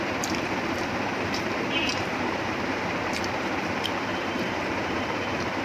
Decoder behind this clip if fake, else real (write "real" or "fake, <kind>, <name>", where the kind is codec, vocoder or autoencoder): fake, vocoder, BigVGAN v2